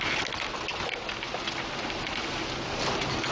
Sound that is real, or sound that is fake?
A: real